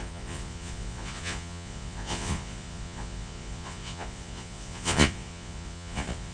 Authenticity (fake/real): fake